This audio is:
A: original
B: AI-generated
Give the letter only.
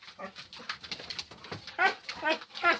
A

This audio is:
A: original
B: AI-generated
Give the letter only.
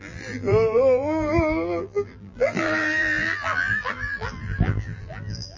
B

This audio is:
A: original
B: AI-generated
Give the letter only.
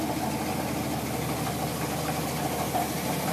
A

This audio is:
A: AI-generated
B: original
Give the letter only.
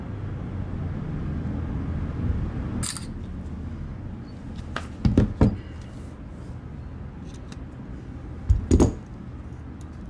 B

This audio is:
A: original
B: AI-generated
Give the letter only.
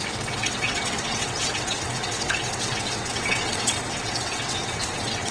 B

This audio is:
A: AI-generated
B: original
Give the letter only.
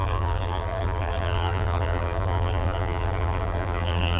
A